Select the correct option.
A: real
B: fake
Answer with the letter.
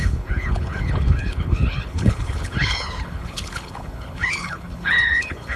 B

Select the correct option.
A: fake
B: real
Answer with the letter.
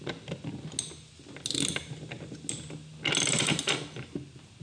B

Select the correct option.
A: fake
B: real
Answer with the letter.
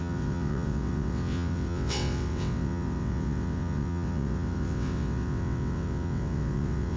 A